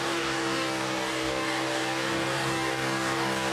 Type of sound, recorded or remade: remade